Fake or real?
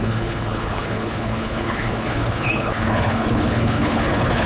fake